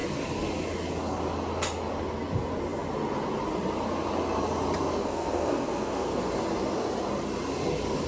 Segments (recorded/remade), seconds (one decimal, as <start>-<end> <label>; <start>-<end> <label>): 0.0-5.0 recorded; 5.0-6.2 remade; 6.2-8.1 recorded